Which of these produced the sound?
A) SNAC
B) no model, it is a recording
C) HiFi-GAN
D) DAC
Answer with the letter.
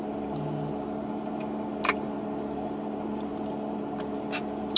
B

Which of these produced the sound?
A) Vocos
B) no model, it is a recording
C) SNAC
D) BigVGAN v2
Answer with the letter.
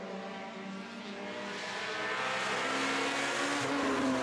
B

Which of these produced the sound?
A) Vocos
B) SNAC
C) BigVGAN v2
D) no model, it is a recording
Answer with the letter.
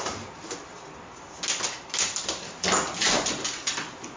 D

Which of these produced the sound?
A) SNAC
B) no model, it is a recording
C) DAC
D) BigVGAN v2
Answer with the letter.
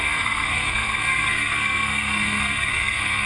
A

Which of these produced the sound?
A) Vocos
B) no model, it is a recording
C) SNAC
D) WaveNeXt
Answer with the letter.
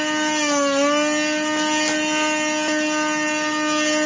B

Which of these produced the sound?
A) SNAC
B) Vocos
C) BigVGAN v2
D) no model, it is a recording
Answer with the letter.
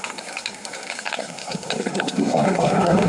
A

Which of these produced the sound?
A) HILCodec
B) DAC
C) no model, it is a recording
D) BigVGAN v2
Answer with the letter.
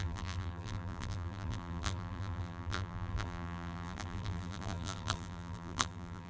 D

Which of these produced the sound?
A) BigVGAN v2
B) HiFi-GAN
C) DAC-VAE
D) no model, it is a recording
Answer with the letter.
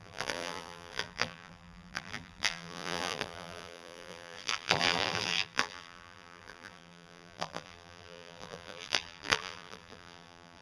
A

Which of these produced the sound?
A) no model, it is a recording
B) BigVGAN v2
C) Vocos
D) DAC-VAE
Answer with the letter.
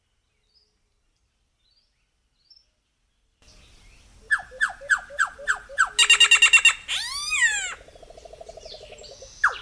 A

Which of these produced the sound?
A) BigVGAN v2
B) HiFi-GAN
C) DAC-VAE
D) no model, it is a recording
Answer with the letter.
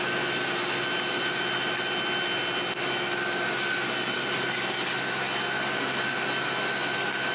D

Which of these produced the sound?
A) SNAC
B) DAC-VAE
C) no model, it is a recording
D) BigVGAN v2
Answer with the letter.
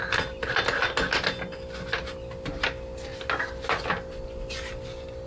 C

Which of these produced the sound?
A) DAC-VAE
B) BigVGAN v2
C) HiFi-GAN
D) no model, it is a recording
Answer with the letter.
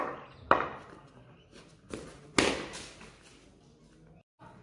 D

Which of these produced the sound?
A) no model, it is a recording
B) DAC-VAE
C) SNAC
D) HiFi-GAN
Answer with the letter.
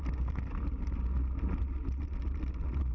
A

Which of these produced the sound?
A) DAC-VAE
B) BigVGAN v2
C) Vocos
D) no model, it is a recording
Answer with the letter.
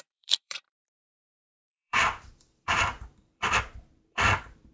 B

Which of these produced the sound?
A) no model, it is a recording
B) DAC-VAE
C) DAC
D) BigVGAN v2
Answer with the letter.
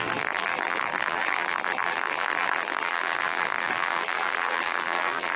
D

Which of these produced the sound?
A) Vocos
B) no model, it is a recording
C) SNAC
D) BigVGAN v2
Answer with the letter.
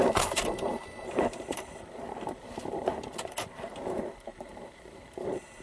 D